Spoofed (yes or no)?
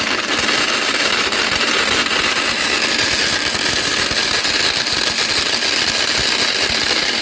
no